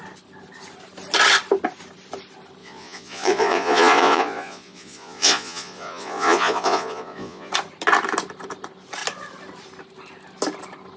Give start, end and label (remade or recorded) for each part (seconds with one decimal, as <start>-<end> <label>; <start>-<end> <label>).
0.0-2.6 recorded; 2.6-7.5 remade; 7.5-11.0 recorded